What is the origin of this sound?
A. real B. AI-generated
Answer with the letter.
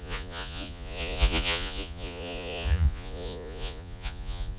B